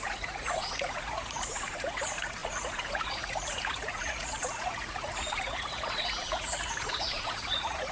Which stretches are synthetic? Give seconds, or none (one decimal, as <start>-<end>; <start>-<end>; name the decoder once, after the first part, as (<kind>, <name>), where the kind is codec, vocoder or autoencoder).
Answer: 0.0-7.9 (vocoder, Vocos)